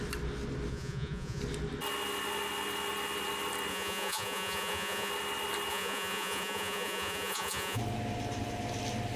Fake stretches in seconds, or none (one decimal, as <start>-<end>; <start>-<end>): 0.7-1.4; 3.7-5.1; 5.7-7.8